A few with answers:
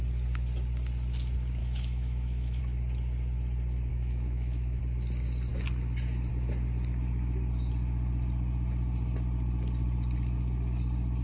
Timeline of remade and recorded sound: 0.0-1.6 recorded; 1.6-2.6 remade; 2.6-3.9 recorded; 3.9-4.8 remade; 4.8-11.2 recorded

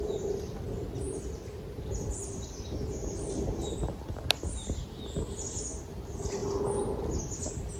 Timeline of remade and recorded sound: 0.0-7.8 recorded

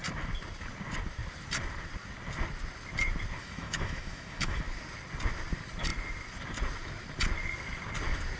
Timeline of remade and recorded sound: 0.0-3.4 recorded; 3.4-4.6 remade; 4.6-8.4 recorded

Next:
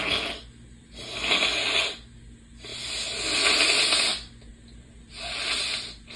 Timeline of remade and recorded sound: 0.0-6.2 recorded

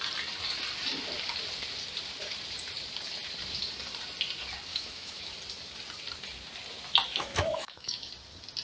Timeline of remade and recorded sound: 0.0-4.7 recorded; 4.7-5.3 remade; 5.3-7.1 recorded; 7.1-8.1 remade; 8.1-8.6 recorded